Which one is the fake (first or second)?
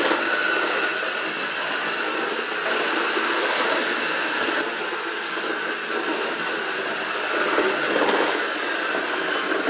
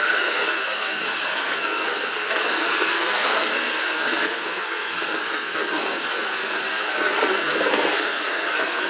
second